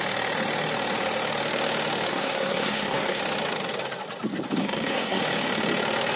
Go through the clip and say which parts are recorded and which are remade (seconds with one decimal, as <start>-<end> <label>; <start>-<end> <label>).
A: 0.0-2.1 recorded; 2.1-3.2 remade; 3.2-4.6 recorded; 4.6-5.2 remade; 5.2-6.2 recorded